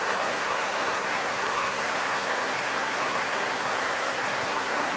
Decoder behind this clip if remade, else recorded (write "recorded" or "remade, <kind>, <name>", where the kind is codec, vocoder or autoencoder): remade, codec, SNAC